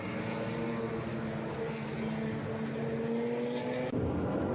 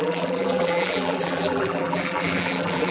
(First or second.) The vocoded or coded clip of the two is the second